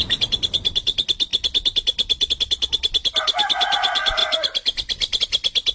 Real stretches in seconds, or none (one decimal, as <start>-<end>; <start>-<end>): 0.0-5.7